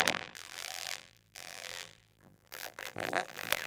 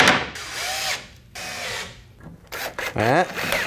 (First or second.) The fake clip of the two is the first